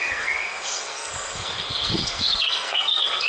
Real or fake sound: fake